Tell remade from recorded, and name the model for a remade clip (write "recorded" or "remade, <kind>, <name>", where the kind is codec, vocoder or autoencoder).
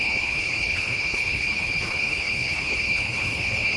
remade, codec, HILCodec